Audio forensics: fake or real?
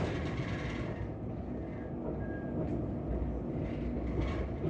real